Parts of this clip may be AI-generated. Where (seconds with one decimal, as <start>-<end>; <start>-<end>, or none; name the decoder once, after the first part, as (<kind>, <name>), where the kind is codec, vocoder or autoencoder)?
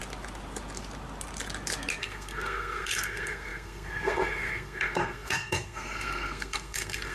2.0-7.1 (codec, SNAC)